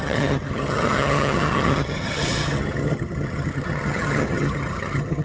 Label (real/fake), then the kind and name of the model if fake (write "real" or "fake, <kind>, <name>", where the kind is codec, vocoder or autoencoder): fake, vocoder, HiFi-GAN